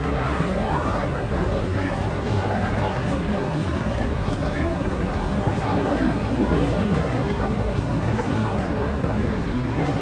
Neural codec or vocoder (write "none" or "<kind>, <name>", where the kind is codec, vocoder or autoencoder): codec, SNAC